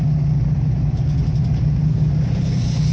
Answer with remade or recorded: recorded